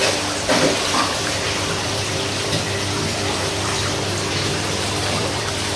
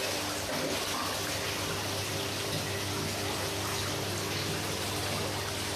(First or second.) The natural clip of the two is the second